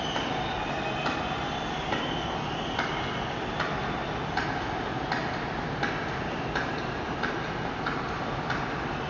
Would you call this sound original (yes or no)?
yes